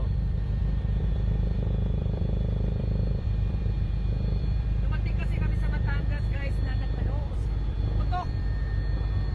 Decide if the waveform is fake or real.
fake